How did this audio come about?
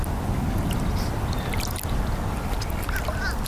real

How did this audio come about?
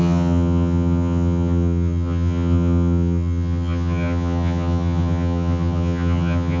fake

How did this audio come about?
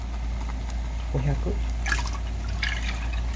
real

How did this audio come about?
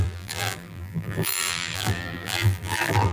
fake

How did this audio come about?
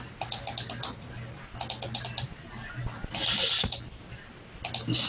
real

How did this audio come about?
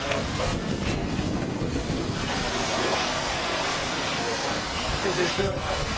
fake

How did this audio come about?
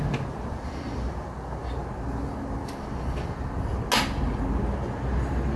real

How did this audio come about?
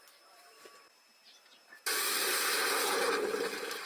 fake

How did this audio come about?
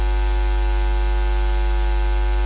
real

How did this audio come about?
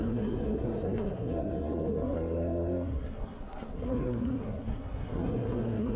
fake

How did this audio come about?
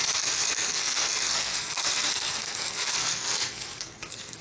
fake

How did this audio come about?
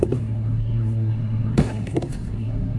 fake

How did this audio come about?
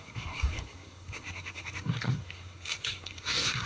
fake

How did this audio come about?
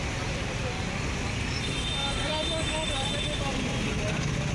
real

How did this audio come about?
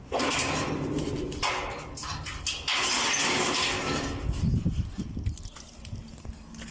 real